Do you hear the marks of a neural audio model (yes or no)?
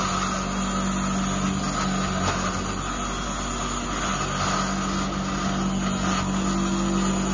no